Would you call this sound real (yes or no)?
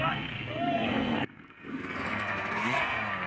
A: no